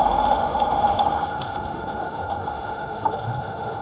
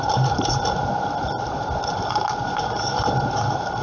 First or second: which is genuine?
second